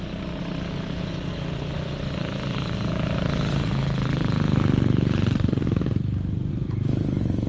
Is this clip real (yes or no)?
yes